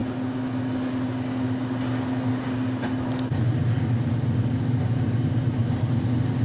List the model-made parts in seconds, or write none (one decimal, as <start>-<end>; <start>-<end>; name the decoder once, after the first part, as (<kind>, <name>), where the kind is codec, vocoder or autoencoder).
none

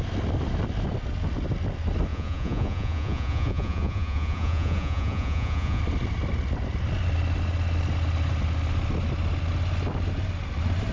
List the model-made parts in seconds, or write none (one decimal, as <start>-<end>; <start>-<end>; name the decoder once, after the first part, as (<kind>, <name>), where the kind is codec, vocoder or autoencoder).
2.1-5.8 (vocoder, Vocos)

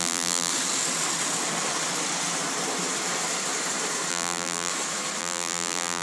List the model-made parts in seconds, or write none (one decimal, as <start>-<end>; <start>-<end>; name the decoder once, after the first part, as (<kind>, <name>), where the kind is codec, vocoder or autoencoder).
0.0-0.5 (vocoder, BigVGAN v2); 4.1-4.7; 5.2-6.0

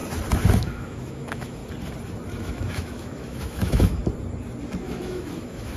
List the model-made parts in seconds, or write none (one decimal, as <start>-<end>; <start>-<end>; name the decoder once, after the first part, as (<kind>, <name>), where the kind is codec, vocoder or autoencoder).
0.5-1.6 (autoencoder, DAC-VAE); 2.4-4.0; 4.8-5.8

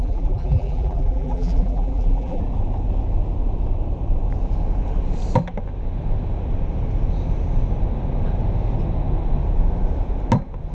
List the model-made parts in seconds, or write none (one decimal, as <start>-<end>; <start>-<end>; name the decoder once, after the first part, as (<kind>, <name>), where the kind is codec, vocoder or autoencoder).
0.0-2.4 (vocoder, BigVGAN v2)

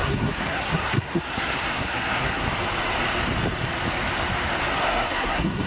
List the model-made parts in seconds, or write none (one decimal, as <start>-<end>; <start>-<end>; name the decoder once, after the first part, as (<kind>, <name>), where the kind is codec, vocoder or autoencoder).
0.0-2.5 (codec, SNAC); 4.7-5.7